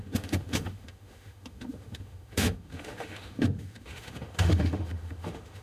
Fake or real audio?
fake